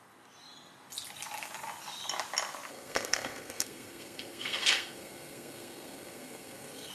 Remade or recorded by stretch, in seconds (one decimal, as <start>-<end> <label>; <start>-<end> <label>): 0.0-2.7 recorded; 2.7-6.9 remade